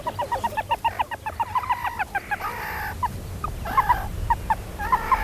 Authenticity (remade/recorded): recorded